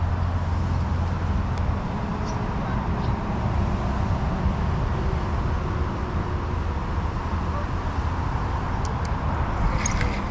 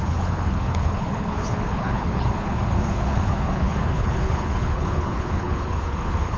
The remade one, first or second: second